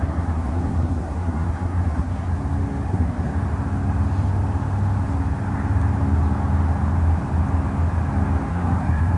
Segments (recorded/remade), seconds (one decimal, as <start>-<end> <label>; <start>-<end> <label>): 0.0-2.3 remade; 2.3-2.9 recorded; 2.9-3.3 remade; 3.3-8.5 recorded; 8.5-9.2 remade